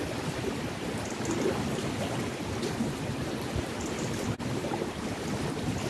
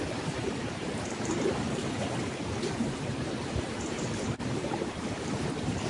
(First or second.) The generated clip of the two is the second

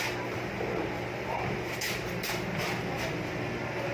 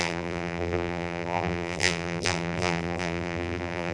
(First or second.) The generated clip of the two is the second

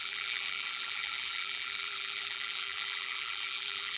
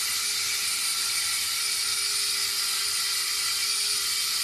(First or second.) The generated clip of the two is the first